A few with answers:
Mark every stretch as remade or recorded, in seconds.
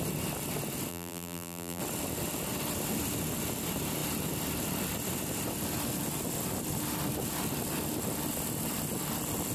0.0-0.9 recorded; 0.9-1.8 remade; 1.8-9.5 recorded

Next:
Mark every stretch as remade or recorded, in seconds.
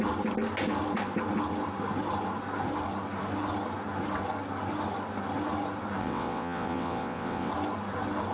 0.0-6.0 recorded; 6.0-7.5 remade; 7.5-8.3 recorded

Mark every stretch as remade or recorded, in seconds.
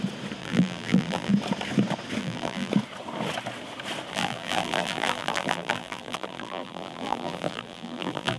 0.0-0.4 recorded; 0.4-1.3 remade; 1.3-2.2 recorded; 2.2-2.7 remade; 2.7-4.1 recorded; 4.1-8.4 remade